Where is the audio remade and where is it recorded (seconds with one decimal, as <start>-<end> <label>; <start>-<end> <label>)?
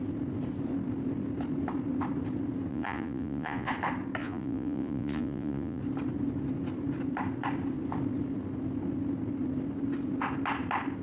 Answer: 0.0-2.7 recorded; 2.7-3.7 remade; 3.7-4.2 recorded; 4.2-5.8 remade; 5.8-11.0 recorded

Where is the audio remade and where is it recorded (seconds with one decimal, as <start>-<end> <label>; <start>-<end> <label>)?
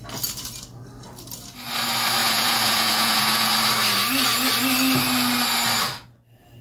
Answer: 0.0-2.2 recorded; 2.2-3.5 remade; 3.5-6.6 recorded